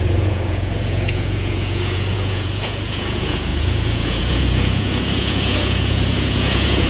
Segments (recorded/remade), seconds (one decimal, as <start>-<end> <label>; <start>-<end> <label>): 0.0-6.9 remade